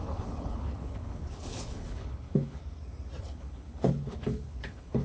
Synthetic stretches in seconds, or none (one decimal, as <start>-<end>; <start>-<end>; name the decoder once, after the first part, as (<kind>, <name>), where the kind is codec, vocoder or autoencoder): 0.0-2.6 (codec, HILCodec); 3.2-5.0